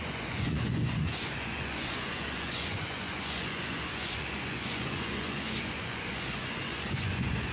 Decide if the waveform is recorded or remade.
remade